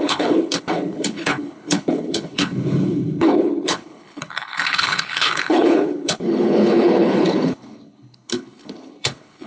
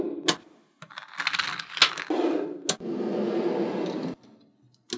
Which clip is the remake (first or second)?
first